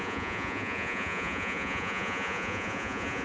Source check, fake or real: fake